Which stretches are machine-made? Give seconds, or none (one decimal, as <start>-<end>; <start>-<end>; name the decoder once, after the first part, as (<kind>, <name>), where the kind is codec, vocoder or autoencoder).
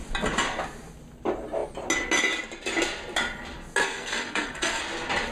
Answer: 3.8-4.8 (codec, SNAC)